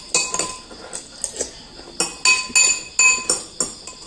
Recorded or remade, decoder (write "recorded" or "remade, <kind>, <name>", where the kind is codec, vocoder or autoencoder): recorded